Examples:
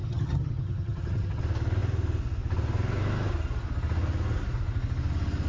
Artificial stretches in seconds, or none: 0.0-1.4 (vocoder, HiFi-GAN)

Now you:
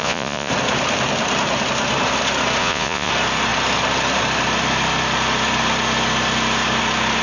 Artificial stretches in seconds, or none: 0.0-0.5 (vocoder, Vocos); 2.6-3.1

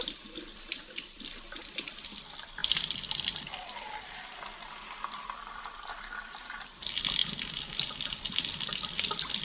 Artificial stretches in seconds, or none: 0.0-9.4 (vocoder, BigVGAN v2)

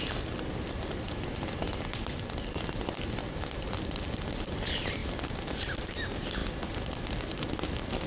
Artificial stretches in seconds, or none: none